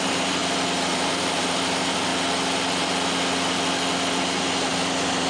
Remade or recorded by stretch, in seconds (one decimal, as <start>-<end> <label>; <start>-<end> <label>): 0.0-0.4 remade; 0.4-0.9 recorded; 0.9-2.1 remade; 2.1-4.2 recorded; 4.2-5.3 remade